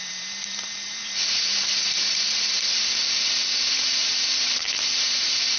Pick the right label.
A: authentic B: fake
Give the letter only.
B